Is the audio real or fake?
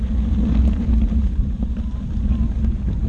real